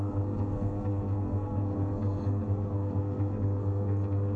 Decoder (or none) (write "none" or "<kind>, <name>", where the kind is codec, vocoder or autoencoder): codec, SNAC